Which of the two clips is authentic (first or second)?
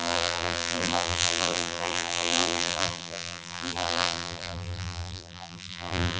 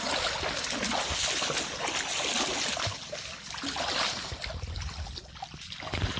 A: second